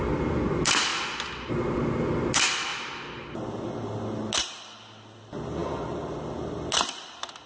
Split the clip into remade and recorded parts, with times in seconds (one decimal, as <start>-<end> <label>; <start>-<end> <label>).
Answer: 0.0-7.5 recorded